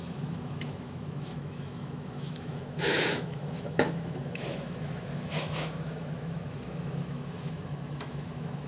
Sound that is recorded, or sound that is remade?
remade